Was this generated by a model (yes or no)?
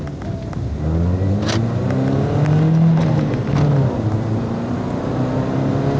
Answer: no